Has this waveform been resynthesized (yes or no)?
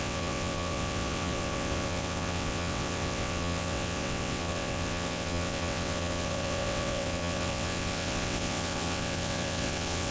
yes